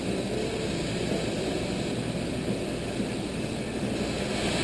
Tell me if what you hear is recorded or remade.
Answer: recorded